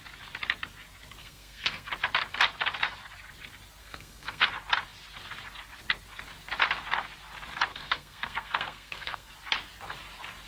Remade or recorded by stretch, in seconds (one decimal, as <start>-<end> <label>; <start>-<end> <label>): 0.0-1.2 recorded; 1.2-1.9 remade; 1.9-3.8 recorded; 3.8-4.5 remade; 4.5-7.7 recorded; 7.7-9.3 remade; 9.3-10.5 recorded